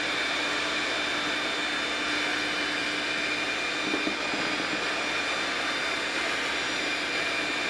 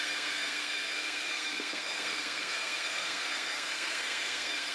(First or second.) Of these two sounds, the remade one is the second